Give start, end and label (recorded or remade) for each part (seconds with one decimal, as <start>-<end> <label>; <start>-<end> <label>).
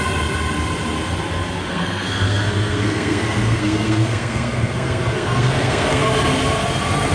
0.0-1.7 recorded; 1.7-6.0 remade; 6.0-7.1 recorded